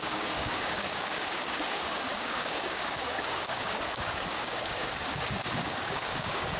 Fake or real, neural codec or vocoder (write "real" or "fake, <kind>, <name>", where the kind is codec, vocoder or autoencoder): fake, codec, DAC